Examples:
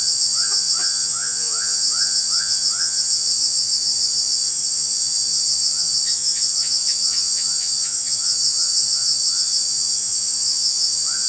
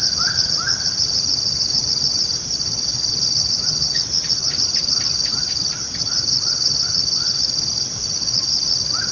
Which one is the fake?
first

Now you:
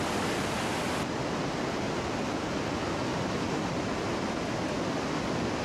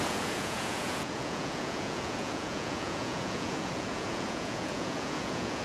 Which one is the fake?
second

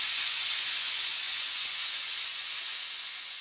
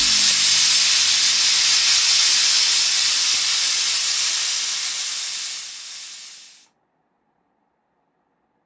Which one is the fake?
first